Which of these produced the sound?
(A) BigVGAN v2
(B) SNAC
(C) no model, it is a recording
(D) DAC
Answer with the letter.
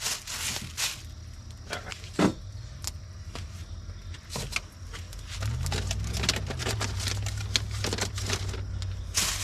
C